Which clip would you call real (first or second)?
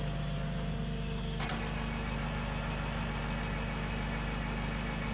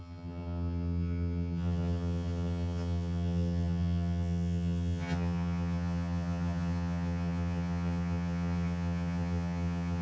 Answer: first